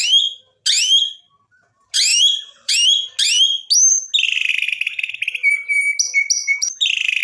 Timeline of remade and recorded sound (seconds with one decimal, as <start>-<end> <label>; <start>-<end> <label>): 0.0-2.1 recorded; 2.1-2.7 remade; 2.7-6.4 recorded; 6.4-7.2 remade